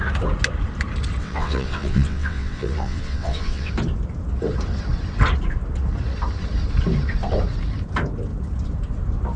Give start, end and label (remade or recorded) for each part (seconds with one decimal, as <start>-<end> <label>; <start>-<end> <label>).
0.0-1.2 recorded; 1.2-3.7 remade; 3.7-9.4 recorded